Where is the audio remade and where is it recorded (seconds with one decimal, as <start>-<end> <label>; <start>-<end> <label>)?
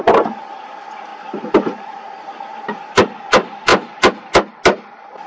0.0-5.3 recorded